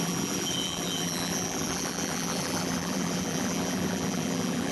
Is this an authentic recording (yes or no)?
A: no